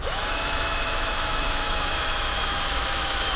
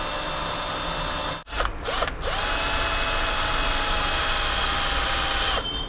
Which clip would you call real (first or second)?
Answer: second